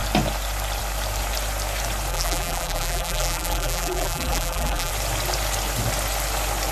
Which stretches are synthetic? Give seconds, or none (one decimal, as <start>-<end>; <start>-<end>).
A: 2.1-4.9